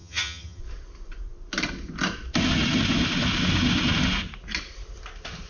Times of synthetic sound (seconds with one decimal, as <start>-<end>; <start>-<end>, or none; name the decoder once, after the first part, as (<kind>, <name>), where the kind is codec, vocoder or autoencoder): 0.0-0.6 (vocoder, HiFi-GAN)